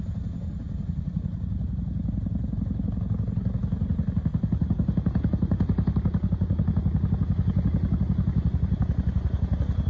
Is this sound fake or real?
real